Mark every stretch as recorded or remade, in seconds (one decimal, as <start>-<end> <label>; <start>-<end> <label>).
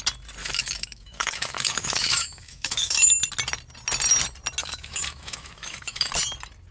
0.0-0.4 recorded; 0.4-3.1 remade; 3.1-4.6 recorded; 4.6-6.1 remade; 6.1-6.7 recorded